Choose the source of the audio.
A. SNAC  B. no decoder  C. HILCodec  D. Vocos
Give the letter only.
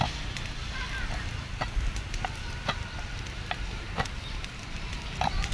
B